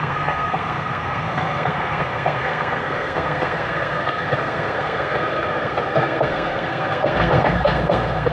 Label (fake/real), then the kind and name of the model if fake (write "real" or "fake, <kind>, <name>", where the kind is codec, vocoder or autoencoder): fake, codec, SNAC